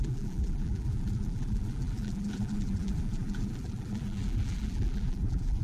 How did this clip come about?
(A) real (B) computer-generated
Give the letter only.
B